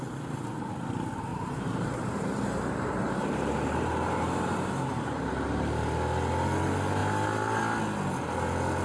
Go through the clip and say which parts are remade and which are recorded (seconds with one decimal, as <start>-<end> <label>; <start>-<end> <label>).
0.0-1.3 recorded; 1.3-5.6 remade; 5.6-8.8 recorded